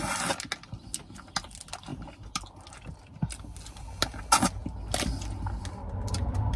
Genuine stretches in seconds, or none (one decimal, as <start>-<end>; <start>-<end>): 0.0-6.6